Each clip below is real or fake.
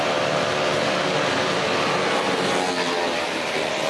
fake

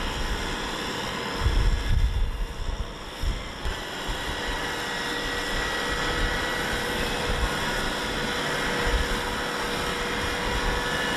real